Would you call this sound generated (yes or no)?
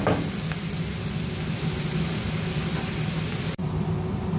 no